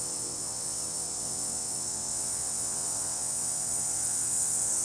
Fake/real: fake